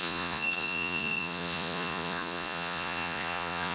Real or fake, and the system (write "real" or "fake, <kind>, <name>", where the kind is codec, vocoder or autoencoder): fake, vocoder, Vocos